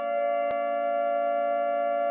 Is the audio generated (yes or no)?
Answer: no